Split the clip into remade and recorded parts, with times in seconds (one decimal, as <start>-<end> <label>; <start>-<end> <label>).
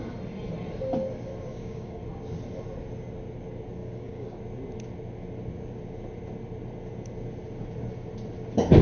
0.0-1.5 recorded; 1.5-2.0 remade; 2.0-3.8 recorded; 3.8-4.4 remade; 4.4-8.8 recorded